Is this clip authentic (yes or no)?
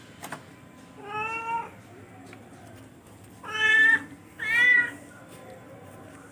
yes